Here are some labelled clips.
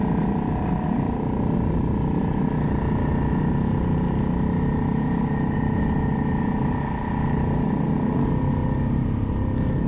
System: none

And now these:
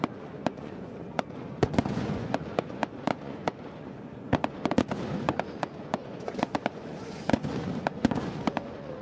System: vocoder, Vocos